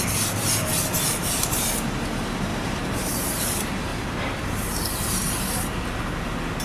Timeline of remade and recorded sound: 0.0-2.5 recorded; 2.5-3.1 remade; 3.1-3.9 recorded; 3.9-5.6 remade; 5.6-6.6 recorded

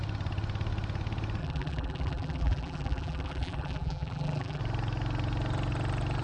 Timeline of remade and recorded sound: 0.0-1.4 recorded; 1.4-4.6 remade; 4.6-6.2 recorded

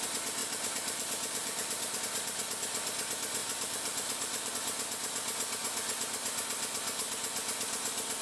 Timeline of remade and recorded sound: 0.0-0.4 recorded; 0.4-2.0 remade; 2.0-3.4 recorded; 3.4-4.5 remade; 4.5-8.2 recorded